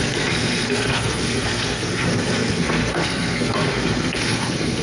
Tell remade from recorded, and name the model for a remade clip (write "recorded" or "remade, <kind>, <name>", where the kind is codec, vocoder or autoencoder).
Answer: remade, codec, SNAC